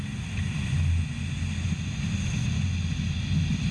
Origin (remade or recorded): recorded